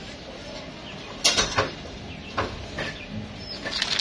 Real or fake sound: real